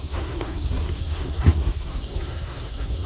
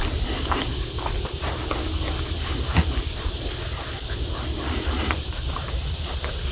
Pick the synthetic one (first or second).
first